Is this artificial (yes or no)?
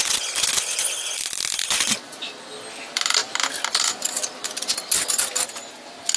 no